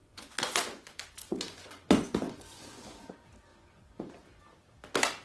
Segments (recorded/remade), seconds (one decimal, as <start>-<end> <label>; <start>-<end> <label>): 0.0-3.1 remade; 3.1-3.5 recorded; 3.5-4.4 remade; 4.4-5.2 recorded